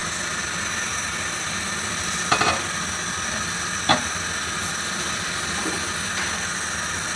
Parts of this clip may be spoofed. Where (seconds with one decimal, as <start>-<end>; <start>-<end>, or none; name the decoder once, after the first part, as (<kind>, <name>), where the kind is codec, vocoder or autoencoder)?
none

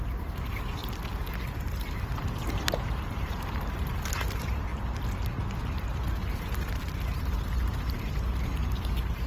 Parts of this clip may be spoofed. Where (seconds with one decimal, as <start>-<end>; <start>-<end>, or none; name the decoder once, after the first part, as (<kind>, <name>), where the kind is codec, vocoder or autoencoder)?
0.0-0.8 (vocoder, BigVGAN v2); 1.6-4.7; 5.6-9.3

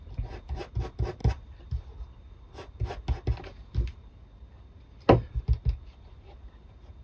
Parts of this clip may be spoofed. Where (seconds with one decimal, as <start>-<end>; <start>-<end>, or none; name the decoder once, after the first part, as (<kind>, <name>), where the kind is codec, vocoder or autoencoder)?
none

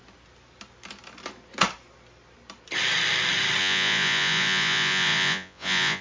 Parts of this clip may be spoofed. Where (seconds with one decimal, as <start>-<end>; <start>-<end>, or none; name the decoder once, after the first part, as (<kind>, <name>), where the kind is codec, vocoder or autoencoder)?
3.6-6.0 (vocoder, Vocos)

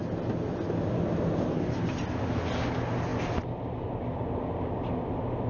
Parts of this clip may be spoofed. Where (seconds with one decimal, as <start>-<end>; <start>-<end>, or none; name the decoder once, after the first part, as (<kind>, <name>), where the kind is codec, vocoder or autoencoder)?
none

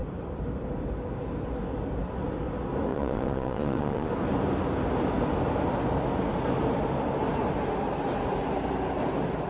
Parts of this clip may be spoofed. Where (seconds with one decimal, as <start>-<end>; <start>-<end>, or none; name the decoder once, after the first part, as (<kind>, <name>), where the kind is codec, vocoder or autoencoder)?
2.9-4.1 (vocoder, Vocos)